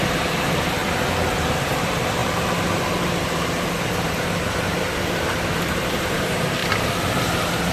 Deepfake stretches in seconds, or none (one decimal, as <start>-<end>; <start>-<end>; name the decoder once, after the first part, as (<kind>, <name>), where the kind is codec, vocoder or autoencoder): 0.0-0.8 (vocoder, BigVGAN v2); 1.4-6.6